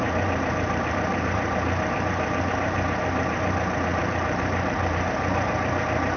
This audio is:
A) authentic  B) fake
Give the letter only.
B